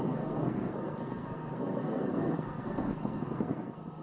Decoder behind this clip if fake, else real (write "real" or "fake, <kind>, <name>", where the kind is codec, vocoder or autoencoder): fake, codec, SNAC